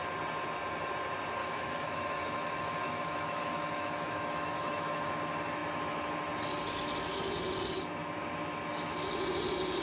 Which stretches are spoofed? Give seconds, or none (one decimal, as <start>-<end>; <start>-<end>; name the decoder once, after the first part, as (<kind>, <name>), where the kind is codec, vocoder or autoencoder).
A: 1.4-5.1 (autoencoder, DAC-VAE)